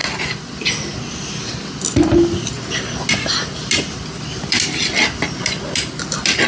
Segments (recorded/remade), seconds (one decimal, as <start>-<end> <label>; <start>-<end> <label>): 0.0-6.5 recorded